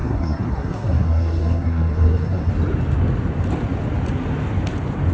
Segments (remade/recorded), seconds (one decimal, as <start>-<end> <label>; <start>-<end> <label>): 0.0-2.5 remade; 2.5-5.1 recorded